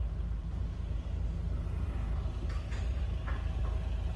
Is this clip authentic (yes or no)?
yes